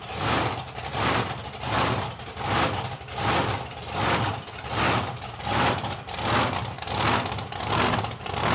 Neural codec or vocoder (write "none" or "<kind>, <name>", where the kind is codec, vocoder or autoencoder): none